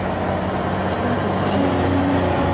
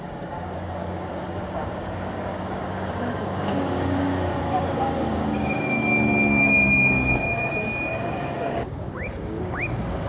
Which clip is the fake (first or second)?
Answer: second